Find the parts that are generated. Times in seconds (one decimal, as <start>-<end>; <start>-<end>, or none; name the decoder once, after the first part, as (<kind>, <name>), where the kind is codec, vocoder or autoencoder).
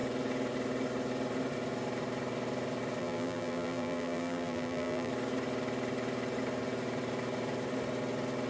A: 3.0-5.1 (vocoder, BigVGAN v2)